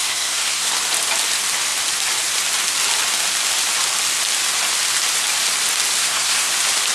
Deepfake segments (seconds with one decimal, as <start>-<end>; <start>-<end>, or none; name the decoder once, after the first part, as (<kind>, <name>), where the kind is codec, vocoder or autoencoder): 0.0-0.7 (codec, SNAC); 6.0-6.5